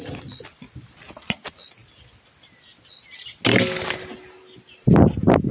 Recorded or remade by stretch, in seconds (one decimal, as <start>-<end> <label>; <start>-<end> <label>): 0.0-5.5 recorded